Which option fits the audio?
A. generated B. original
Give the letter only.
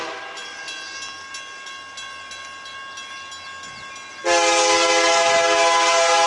B